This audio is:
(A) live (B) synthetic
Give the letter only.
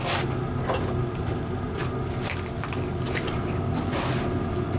A